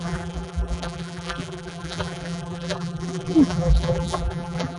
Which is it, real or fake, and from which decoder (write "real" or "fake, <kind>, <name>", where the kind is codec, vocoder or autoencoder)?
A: fake, vocoder, BigVGAN v2